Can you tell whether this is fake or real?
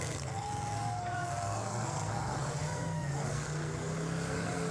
fake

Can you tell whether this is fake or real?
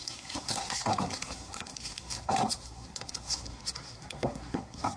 fake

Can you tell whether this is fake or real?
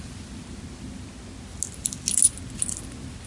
real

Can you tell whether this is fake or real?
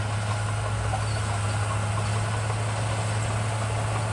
real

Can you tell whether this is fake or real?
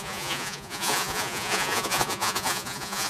fake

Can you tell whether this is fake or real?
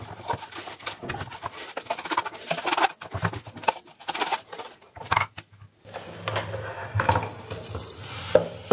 real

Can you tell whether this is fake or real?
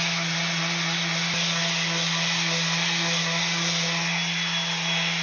real